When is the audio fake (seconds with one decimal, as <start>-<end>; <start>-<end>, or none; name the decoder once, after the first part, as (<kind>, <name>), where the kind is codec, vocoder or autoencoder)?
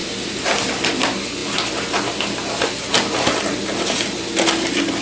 none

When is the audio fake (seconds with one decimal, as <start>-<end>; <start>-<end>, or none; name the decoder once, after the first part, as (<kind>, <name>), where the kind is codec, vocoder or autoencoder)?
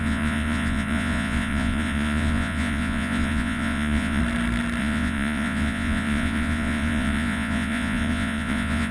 0.0-4.2 (vocoder, Vocos); 4.8-8.9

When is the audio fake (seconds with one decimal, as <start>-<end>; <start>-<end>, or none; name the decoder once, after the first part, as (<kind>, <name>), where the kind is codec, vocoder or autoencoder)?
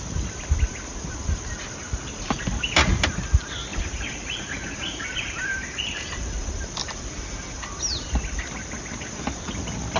none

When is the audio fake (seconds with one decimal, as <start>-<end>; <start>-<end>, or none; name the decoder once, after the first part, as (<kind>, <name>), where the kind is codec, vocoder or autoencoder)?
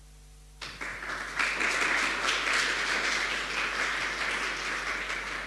none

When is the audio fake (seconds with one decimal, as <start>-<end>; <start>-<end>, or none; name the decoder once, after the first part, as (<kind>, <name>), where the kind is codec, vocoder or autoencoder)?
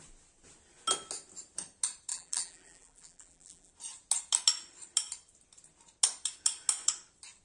2.1-3.7 (vocoder, BigVGAN v2)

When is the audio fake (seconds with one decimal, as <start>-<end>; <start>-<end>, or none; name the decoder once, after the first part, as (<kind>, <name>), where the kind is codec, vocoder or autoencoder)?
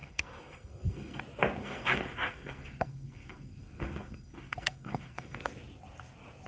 0.0-1.2 (codec, SNAC); 1.6-5.5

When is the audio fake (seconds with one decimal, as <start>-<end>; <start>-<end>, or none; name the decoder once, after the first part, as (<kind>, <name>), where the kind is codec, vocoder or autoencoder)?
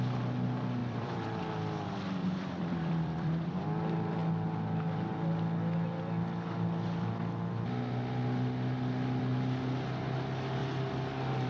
0.8-1.4 (vocoder, BigVGAN v2); 2.2-3.8